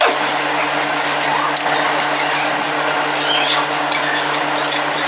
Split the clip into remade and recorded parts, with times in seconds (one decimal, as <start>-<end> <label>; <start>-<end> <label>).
0.0-5.1 recorded